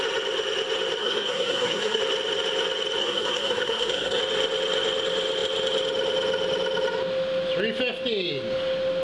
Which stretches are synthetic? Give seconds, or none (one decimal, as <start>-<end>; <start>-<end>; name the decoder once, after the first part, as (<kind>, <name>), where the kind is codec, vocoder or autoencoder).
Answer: 1.0-2.0 (codec, SNAC); 3.0-4.2